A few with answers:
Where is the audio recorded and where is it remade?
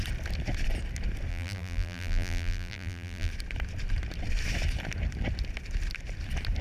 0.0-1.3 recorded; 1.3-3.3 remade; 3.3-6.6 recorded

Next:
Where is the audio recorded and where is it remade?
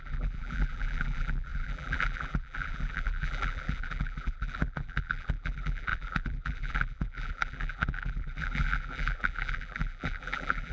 0.0-10.7 remade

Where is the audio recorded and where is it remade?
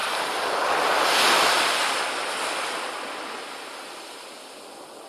0.0-2.0 remade; 2.0-5.1 recorded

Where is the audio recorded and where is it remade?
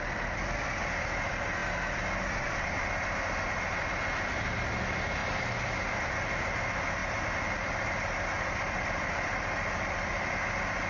0.0-1.6 recorded; 1.6-3.5 remade; 3.5-5.2 recorded; 5.2-6.0 remade; 6.0-7.0 recorded; 7.0-10.3 remade; 10.3-10.9 recorded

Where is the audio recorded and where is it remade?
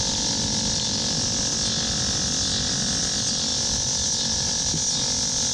0.0-1.5 remade; 1.5-3.0 recorded; 3.0-5.5 remade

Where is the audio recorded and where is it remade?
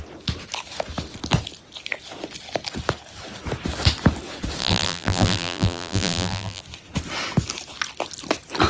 0.0-4.6 recorded; 4.6-6.6 remade; 6.6-8.7 recorded